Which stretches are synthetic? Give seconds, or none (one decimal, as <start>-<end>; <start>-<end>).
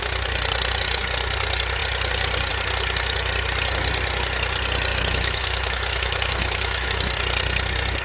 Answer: 4.9-7.0